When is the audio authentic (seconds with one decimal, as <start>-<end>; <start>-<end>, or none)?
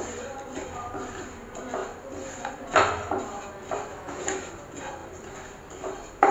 0.0-3.9; 4.5-6.3